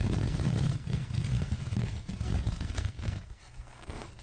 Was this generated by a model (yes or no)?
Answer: yes